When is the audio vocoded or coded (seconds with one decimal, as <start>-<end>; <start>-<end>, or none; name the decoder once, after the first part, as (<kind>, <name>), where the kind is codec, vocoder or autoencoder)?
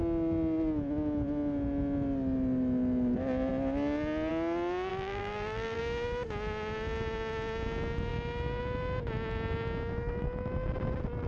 4.9-5.8 (vocoder, BigVGAN v2)